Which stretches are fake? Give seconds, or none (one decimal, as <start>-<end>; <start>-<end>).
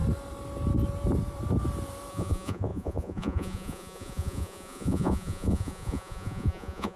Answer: 2.1-7.0